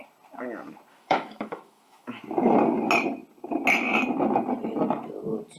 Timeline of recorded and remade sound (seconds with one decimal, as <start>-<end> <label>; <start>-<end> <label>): 0.0-0.9 recorded; 0.9-2.2 remade; 2.2-5.6 recorded